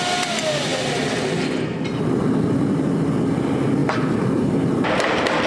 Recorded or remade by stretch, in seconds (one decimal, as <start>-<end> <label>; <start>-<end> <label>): 0.0-5.5 recorded